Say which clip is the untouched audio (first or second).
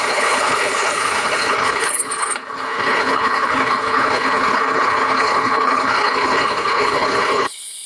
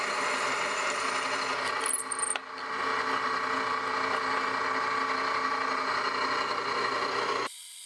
second